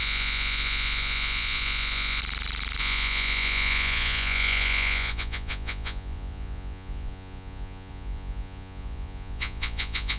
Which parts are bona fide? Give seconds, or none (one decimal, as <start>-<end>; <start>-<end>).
2.2-2.8